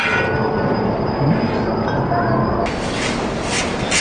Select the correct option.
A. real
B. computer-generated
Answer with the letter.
A